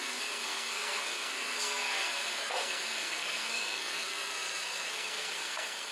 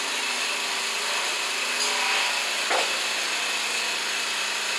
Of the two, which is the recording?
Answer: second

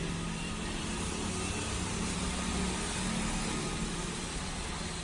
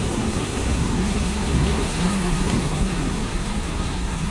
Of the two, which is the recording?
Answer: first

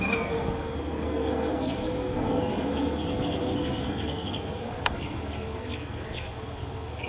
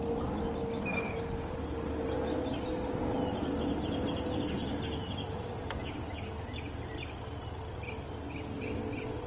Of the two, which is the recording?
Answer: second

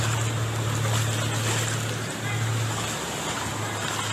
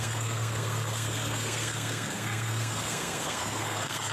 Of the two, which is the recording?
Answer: first